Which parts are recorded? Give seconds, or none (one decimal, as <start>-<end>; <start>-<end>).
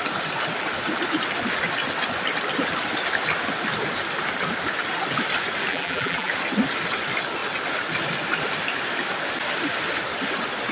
0.0-5.7; 6.3-10.7